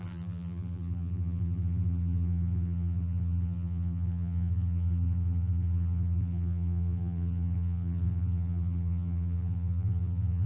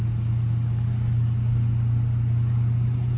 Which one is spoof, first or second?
first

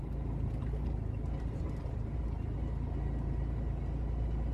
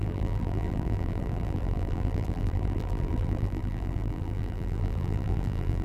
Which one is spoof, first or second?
second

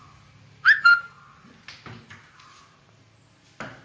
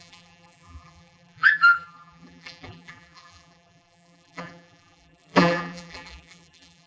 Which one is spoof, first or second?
second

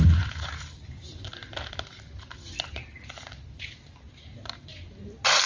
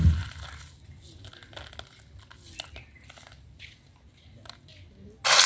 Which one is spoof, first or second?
first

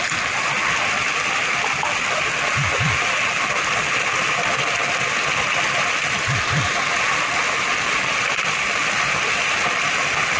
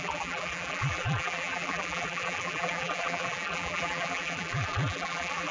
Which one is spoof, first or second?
second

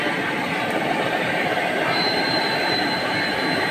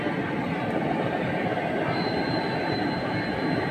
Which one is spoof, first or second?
first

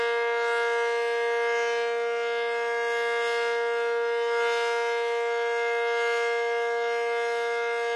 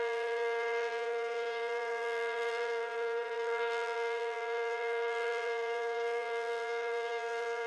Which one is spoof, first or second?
second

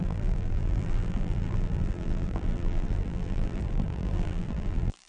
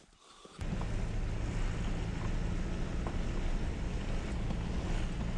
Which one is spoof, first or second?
first